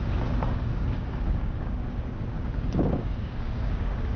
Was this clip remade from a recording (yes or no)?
yes